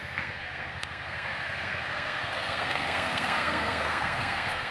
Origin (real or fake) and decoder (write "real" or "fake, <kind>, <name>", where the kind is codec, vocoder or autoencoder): fake, codec, SNAC